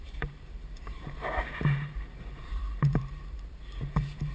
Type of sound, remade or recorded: remade